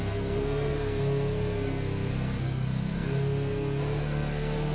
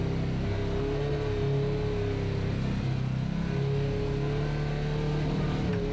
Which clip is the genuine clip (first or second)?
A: second